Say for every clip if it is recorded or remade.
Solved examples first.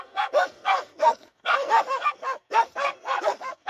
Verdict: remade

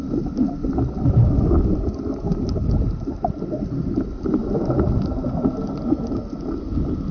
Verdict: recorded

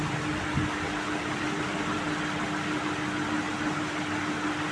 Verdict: recorded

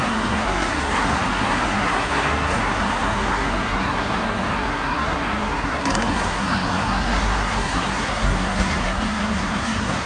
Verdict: remade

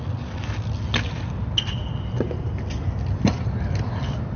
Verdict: recorded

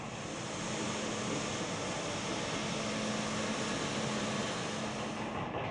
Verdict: recorded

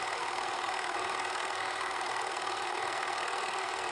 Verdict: remade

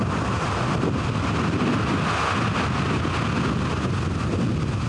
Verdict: recorded